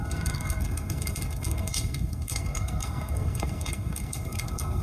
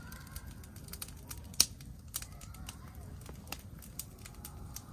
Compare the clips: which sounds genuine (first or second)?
second